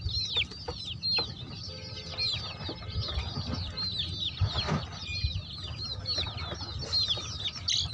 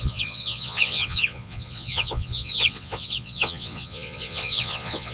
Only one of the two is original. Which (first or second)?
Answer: first